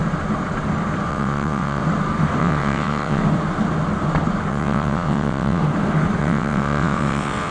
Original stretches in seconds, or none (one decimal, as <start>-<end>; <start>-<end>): 0.0-1.1; 1.8-2.4; 3.2-4.5; 5.6-6.2